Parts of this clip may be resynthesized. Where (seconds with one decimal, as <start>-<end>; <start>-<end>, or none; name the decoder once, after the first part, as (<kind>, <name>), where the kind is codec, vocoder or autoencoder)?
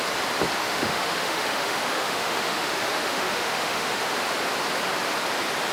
0.6-4.0 (autoencoder, DAC-VAE)